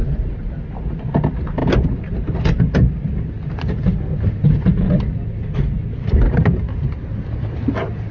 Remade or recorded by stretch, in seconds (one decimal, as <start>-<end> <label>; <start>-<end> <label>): 0.0-8.1 recorded